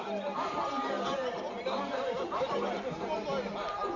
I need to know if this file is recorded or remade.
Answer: recorded